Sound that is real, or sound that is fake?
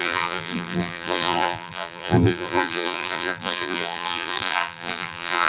fake